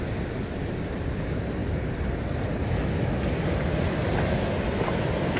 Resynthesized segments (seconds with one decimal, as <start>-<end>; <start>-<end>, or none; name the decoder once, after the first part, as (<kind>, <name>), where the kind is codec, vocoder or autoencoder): none